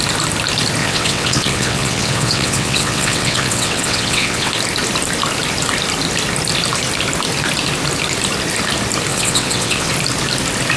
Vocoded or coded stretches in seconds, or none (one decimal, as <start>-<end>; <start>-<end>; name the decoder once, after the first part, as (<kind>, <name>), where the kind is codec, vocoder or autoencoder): 0.8-4.5 (vocoder, WaveNeXt); 9.1-9.9